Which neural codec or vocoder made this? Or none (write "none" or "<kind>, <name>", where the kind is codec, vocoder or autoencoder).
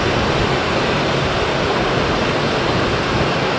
none